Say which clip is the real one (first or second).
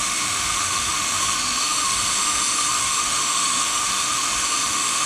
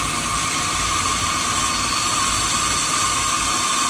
second